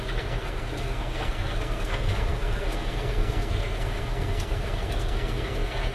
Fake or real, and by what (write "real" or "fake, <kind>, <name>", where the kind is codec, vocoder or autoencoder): fake, codec, SNAC